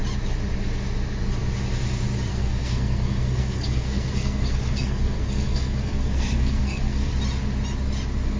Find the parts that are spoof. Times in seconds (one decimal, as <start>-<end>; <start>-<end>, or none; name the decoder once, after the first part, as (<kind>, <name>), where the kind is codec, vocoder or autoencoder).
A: 2.3-7.1 (codec, SNAC)